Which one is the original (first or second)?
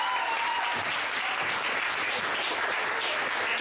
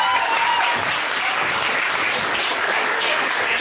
first